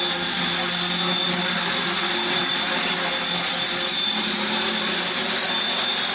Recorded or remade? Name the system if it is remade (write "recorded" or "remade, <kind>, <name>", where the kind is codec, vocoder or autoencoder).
recorded